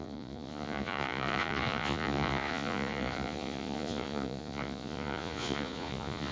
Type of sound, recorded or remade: remade